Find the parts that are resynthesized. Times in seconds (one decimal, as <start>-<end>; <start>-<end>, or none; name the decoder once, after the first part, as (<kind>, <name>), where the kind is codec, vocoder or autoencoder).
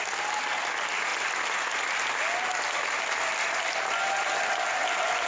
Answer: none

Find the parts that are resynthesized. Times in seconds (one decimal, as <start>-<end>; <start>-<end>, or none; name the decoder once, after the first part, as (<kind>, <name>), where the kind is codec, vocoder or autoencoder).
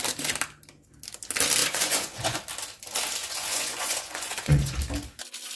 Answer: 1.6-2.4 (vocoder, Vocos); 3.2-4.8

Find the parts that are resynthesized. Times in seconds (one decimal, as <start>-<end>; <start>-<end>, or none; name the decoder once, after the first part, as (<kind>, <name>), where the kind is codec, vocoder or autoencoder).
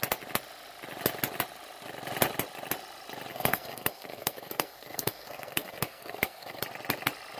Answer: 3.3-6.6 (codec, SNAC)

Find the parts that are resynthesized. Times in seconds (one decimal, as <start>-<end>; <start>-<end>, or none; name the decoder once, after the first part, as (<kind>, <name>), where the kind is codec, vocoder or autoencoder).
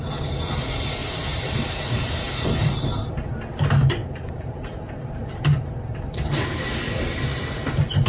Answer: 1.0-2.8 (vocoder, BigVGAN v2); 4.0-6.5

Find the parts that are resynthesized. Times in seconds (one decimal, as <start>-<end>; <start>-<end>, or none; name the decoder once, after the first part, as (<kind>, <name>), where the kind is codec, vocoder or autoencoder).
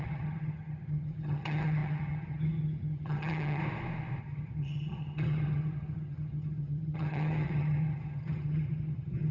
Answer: 0.0-3.6 (vocoder, HiFi-GAN); 4.2-9.3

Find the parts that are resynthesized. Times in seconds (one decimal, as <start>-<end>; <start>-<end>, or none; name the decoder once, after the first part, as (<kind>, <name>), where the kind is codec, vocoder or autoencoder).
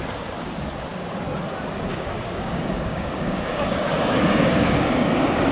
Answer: 1.9-5.5 (codec, DAC)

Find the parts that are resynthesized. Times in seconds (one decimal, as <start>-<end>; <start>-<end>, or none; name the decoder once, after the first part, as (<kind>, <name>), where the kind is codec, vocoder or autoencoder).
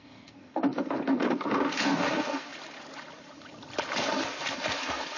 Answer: 0.0-2.5 (codec, SNAC); 4.0-5.2